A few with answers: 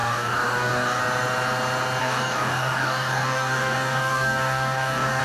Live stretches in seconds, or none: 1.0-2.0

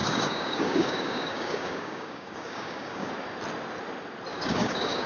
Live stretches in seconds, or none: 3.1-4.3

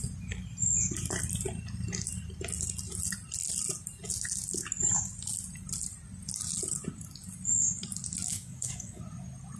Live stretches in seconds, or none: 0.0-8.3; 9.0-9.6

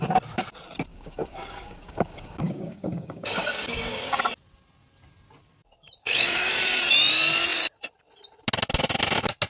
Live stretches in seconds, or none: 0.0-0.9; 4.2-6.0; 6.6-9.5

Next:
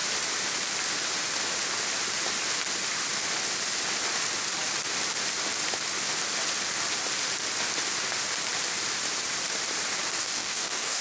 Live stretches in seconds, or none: 0.0-10.2

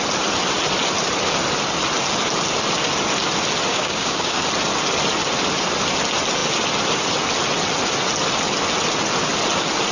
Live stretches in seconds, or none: 0.0-3.7; 4.4-9.9

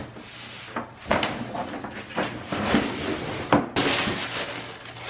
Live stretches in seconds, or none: 0.0-5.1

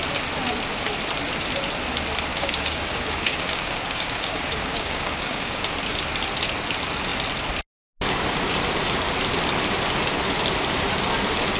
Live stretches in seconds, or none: 0.0-2.3; 5.7-11.6